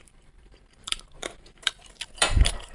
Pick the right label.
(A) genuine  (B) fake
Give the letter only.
B